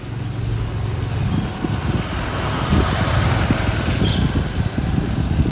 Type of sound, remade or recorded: recorded